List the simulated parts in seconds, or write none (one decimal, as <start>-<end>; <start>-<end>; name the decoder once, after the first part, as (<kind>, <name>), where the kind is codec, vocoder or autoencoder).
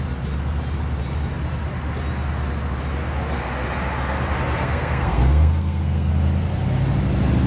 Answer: 4.6-6.1 (codec, SNAC)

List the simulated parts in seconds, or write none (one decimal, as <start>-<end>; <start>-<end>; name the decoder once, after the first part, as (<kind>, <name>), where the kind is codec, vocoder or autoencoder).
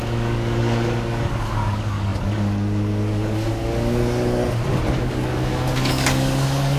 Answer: 0.0-4.4 (codec, DAC); 4.9-6.8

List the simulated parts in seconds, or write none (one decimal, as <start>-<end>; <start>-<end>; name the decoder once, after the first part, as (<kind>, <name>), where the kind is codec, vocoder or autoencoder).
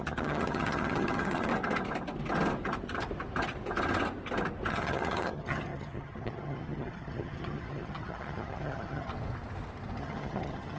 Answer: 0.0-1.5 (vocoder, HiFi-GAN); 4.7-9.1; 10.0-10.8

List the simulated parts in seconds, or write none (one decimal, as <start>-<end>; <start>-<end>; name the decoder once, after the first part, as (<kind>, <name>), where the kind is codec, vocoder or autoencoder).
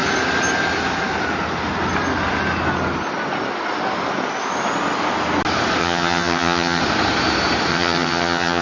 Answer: 5.8-6.8 (vocoder, HiFi-GAN); 7.7-8.6